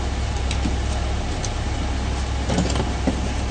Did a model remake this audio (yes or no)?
no